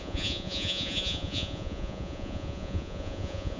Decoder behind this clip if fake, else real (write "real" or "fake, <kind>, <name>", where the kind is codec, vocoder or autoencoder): fake, vocoder, Vocos